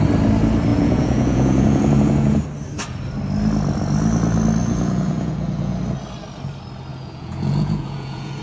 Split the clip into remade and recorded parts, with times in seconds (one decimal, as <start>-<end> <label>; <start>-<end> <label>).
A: 0.0-0.7 recorded; 0.7-2.4 remade; 2.4-4.6 recorded; 4.6-5.8 remade; 5.8-6.9 recorded; 6.9-8.4 remade